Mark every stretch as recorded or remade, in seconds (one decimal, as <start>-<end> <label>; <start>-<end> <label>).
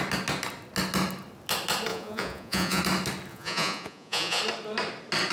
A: 0.0-1.9 recorded; 1.9-2.8 remade; 2.8-3.3 recorded; 3.3-4.4 remade; 4.4-5.3 recorded